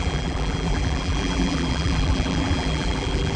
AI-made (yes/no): yes